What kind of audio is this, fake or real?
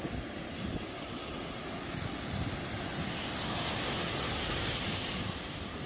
real